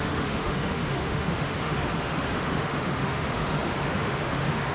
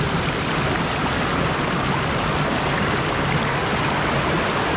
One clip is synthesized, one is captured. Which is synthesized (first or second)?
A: first